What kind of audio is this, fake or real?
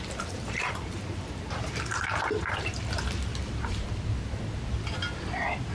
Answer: real